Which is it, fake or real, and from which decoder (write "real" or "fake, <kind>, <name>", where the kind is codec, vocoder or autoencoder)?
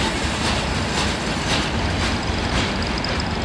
real